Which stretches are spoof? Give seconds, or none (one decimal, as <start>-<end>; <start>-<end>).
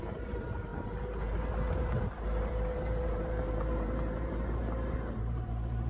0.0-5.9